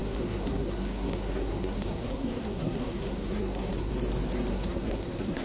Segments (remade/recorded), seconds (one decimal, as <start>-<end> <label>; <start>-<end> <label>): 0.0-3.9 remade; 3.9-4.5 recorded; 4.5-5.4 remade